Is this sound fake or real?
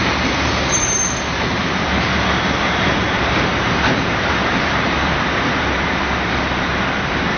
fake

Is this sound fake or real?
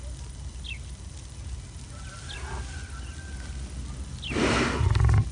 real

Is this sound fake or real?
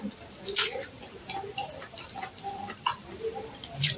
fake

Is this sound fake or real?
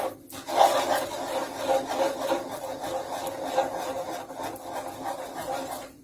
real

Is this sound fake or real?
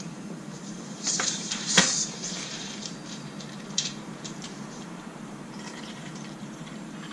fake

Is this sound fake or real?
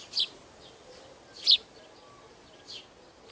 real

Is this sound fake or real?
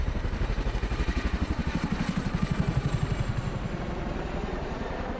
fake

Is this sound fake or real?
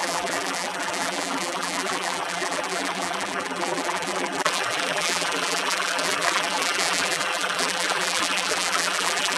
fake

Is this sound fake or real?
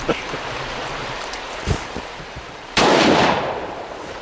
fake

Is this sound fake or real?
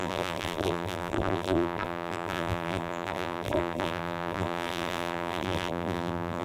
fake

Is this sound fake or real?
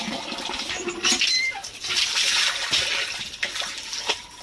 real